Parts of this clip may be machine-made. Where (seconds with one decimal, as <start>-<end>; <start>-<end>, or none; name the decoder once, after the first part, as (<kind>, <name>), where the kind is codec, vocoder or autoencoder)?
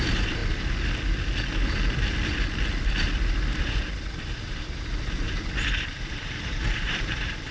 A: 0.0-0.4 (vocoder, BigVGAN v2); 3.6-7.5